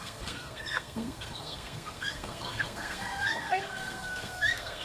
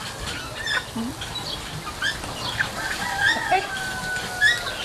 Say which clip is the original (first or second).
second